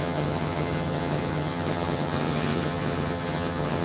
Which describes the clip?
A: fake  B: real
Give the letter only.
A